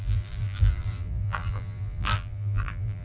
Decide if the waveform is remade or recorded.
remade